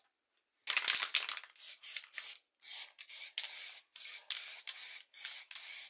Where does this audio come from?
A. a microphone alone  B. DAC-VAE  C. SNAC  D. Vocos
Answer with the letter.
A